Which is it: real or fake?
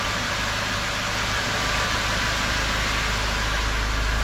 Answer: real